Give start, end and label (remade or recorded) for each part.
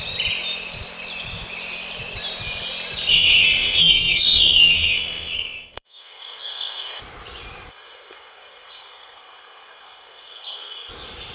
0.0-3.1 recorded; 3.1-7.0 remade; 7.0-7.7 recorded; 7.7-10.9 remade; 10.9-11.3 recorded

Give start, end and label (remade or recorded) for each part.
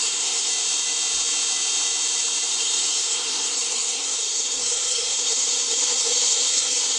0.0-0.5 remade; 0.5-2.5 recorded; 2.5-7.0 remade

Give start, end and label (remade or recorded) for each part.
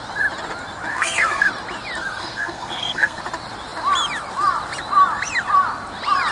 0.0-0.9 recorded; 0.9-1.5 remade; 1.5-2.2 recorded; 2.2-3.2 remade; 3.2-6.3 recorded